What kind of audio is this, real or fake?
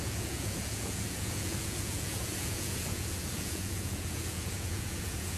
fake